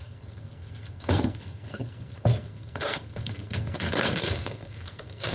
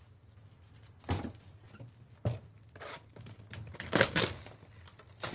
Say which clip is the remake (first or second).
first